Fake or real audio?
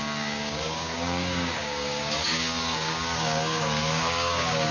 fake